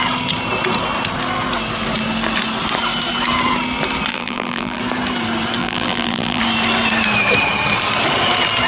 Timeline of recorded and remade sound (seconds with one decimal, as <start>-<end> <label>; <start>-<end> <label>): 0.0-4.1 recorded; 4.1-4.8 remade; 4.8-5.6 recorded; 5.6-6.4 remade; 6.4-8.7 recorded